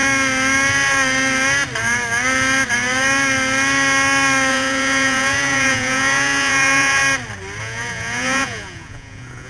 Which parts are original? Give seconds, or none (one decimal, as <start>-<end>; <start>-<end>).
0.0-4.5; 7.0-7.6